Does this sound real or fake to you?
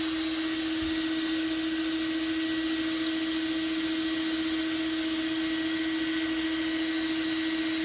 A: real